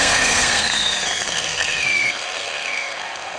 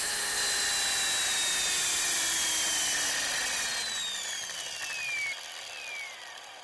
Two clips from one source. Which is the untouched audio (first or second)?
second